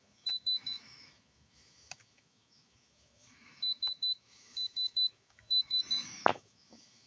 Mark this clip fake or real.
fake